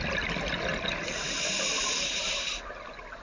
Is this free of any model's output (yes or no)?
yes